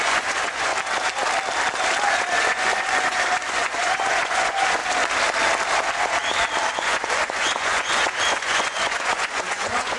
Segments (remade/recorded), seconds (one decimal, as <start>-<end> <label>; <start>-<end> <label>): 0.0-0.7 remade; 0.7-2.1 recorded; 2.1-4.8 remade; 4.8-6.7 recorded; 6.7-10.0 remade